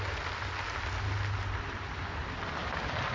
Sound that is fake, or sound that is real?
real